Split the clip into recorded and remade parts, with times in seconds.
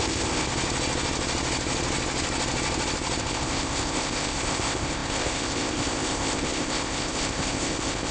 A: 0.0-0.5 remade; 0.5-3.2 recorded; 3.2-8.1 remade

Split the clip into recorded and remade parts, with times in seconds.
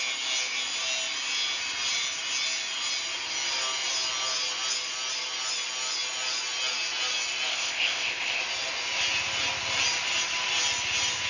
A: 0.0-7.5 recorded; 7.5-8.4 remade; 8.4-11.3 recorded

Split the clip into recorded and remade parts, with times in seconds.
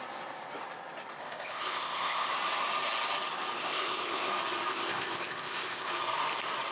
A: 0.0-1.2 recorded; 1.2-2.3 remade; 2.3-3.6 recorded; 3.6-4.3 remade; 4.3-4.7 recorded; 4.7-5.9 remade; 5.9-6.7 recorded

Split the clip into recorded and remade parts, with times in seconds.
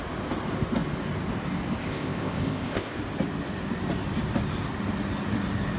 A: 0.0-1.8 recorded; 1.8-3.0 remade; 3.0-5.8 recorded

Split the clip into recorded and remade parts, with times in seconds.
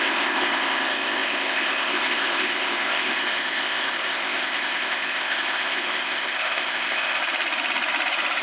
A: 0.0-7.2 remade; 7.2-8.4 recorded